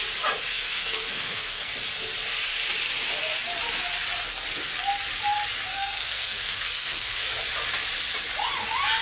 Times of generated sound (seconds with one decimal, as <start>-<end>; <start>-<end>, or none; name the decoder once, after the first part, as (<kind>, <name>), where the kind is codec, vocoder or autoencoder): 0.5-1.7 (codec, SNAC); 5.7-7.4